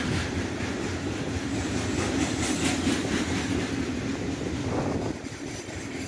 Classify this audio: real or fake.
real